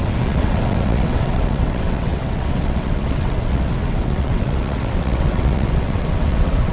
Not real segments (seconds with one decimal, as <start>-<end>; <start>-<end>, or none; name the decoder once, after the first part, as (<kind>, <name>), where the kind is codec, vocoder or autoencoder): 0.0-6.7 (vocoder, WaveNeXt)